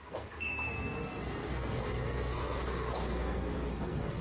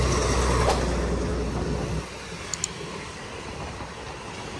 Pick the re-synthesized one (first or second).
first